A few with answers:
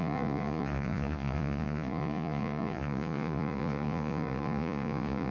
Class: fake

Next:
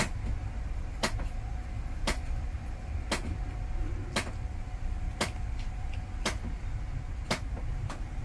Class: real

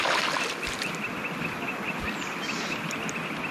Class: real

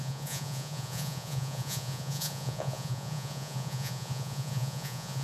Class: fake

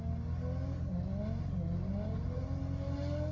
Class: real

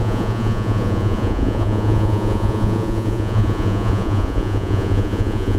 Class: fake